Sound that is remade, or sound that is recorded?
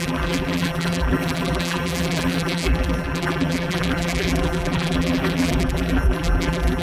remade